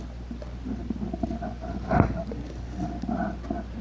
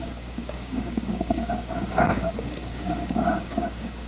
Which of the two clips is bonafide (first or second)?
first